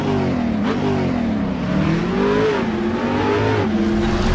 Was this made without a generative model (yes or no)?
yes